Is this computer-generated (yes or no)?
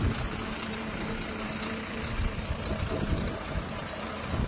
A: yes